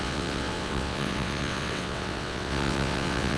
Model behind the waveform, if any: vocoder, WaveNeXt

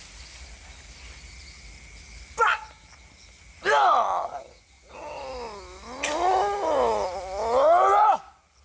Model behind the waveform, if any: none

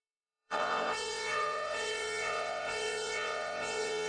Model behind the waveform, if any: vocoder, WaveNeXt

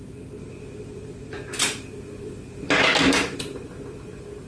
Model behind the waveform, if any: none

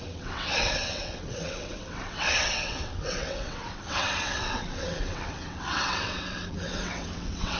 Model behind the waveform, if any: vocoder, WaveNeXt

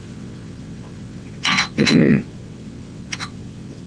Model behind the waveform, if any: vocoder, WaveNeXt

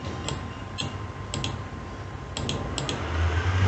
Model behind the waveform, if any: none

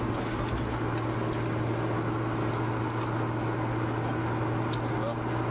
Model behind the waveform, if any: none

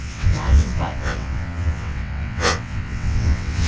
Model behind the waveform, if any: vocoder, WaveNeXt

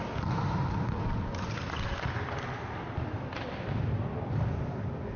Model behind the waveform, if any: none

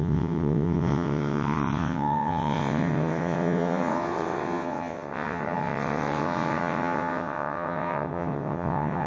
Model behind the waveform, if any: vocoder, WaveNeXt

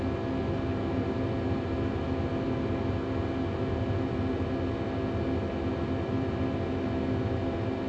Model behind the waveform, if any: none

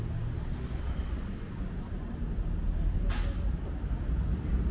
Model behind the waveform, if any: none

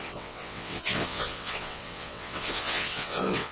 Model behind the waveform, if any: vocoder, WaveNeXt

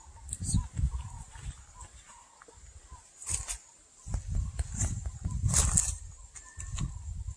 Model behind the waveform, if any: none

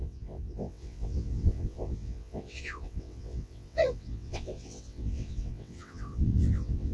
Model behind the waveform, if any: vocoder, WaveNeXt